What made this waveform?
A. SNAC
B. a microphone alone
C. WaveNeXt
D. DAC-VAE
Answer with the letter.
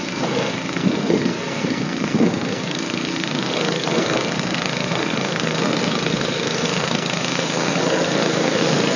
A